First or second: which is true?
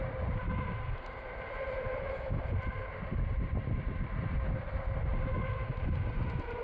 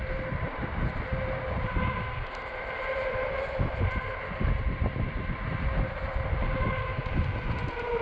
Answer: second